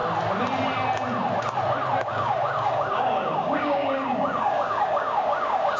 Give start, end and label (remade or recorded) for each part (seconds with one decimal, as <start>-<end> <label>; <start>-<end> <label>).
0.0-2.1 recorded; 2.1-5.8 remade